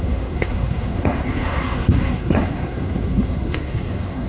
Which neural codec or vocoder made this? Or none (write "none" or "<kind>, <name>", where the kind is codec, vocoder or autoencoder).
codec, SNAC